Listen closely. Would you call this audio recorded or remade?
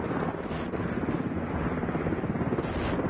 recorded